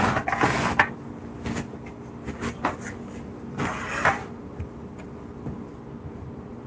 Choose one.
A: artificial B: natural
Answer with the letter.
B